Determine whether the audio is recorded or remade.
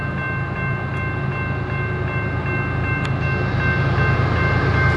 recorded